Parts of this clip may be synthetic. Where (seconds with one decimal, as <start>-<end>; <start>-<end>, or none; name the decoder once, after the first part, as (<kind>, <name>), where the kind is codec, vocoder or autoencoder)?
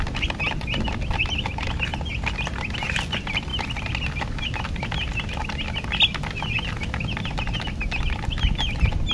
none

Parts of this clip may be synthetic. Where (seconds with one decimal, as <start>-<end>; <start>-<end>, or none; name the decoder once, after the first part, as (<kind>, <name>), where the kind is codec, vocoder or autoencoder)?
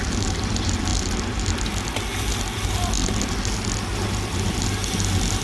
none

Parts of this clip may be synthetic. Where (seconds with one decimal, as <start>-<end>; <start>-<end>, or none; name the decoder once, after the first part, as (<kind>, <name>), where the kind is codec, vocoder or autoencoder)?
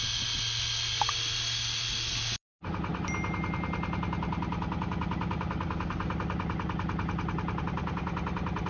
none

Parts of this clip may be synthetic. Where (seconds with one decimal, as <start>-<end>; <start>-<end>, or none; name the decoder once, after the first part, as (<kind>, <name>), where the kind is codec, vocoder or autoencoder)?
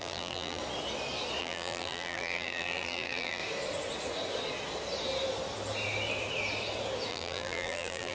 0.0-0.6 (vocoder, BigVGAN v2); 1.4-3.4; 7.1-8.1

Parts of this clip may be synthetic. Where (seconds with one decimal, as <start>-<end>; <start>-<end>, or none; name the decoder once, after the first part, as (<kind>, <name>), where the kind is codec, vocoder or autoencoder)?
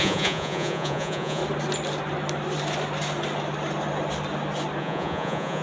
0.0-1.4 (vocoder, Vocos); 4.8-5.6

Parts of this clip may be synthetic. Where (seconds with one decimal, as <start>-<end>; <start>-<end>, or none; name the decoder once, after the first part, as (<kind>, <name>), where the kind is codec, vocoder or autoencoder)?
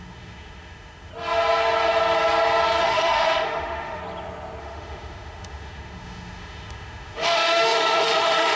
0.0-1.1 (autoencoder, DAC-VAE); 2.8-4.0; 4.6-8.6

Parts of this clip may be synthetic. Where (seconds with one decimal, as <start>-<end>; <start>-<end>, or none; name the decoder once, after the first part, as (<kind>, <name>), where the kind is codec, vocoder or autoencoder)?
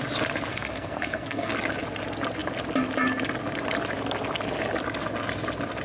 0.5-1.5 (codec, SNAC)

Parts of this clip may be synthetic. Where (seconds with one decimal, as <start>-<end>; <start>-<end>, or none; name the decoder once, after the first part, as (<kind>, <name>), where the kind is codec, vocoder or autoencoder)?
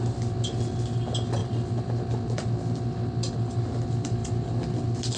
0.0-5.2 (vocoder, BigVGAN v2)